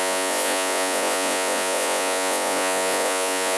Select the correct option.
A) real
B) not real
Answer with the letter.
B